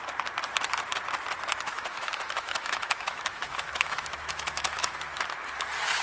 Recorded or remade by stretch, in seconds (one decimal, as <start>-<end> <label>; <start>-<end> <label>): 0.0-1.7 recorded; 1.7-4.9 remade; 4.9-6.0 recorded